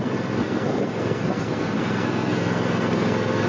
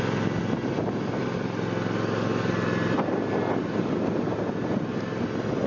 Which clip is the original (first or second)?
second